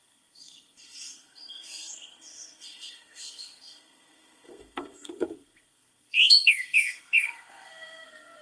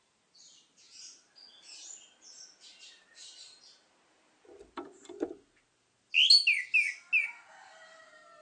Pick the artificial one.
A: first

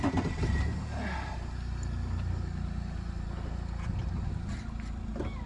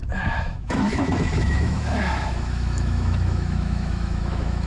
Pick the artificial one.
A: second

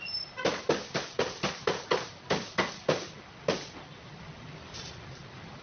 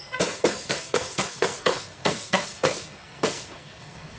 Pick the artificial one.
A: second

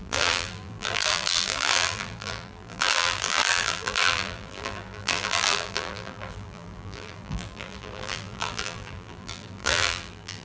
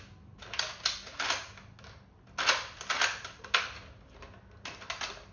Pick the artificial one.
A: first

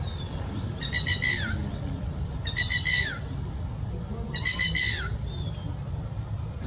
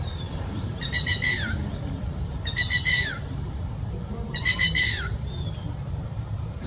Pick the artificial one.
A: second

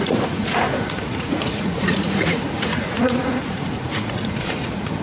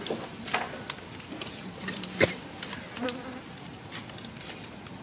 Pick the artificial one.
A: first